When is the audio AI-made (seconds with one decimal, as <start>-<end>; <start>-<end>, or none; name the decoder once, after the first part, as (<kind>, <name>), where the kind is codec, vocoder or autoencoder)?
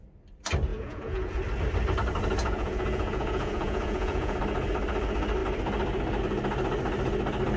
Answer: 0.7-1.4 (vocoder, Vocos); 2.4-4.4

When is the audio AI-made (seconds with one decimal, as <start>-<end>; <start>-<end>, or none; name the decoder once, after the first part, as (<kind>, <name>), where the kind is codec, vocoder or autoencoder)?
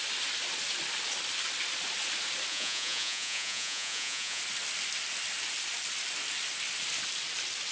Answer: 2.5-4.4 (vocoder, Vocos)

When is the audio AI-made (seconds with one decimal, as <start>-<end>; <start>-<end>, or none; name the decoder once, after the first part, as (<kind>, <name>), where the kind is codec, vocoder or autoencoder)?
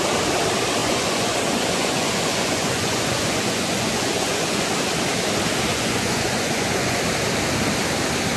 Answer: 0.8-4.7 (vocoder, Vocos); 5.7-7.0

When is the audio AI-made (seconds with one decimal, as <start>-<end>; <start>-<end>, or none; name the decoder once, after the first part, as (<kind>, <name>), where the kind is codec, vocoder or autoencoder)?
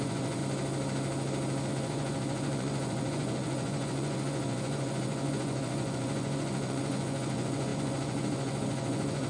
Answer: 0.0-0.4 (vocoder, Vocos); 1.7-9.3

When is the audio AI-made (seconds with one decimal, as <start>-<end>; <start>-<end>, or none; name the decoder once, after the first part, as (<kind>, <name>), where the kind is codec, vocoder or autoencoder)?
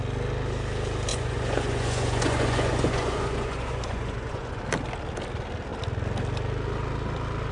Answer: 1.1-4.6 (vocoder, Vocos)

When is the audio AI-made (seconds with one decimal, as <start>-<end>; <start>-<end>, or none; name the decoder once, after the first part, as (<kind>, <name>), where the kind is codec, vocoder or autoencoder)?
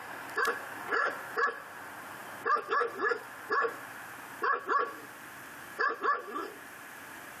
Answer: none